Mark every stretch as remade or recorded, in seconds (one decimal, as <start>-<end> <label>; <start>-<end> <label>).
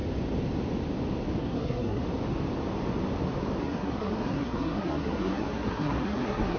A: 0.0-1.4 recorded; 1.4-2.0 remade; 2.0-3.6 recorded; 3.6-6.6 remade